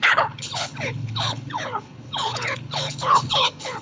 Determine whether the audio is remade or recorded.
remade